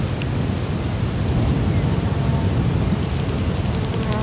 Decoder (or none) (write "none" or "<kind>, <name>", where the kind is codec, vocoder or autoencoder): none